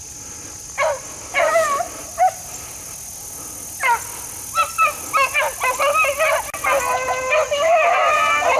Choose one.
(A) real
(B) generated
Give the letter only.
A